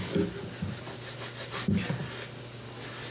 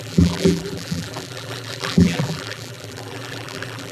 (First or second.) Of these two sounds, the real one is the first